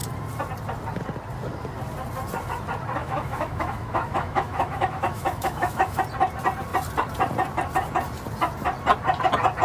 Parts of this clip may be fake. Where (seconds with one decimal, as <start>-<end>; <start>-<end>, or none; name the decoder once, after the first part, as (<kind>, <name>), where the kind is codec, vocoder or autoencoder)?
3.0-6.0 (autoencoder, DAC-VAE)